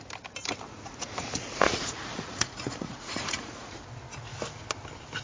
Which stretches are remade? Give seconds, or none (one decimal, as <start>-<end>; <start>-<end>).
0.7-3.8